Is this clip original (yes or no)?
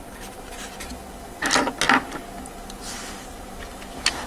yes